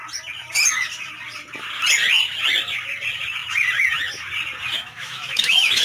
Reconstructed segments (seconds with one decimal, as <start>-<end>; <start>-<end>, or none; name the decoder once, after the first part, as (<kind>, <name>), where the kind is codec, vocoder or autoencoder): 4.7-5.8 (autoencoder, DAC-VAE)